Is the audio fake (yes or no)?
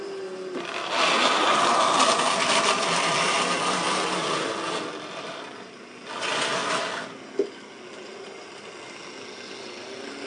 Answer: no